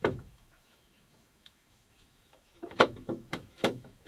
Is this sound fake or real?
fake